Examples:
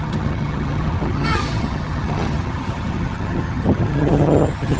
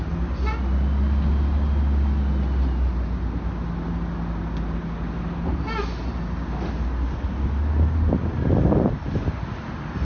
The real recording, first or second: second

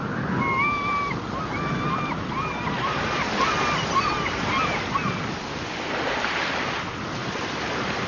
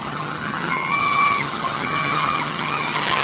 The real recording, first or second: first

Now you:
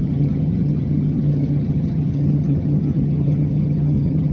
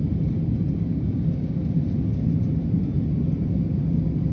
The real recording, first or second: second